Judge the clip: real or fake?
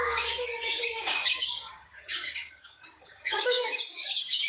fake